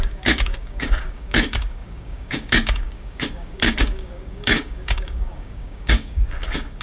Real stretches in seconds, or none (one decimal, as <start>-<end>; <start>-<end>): none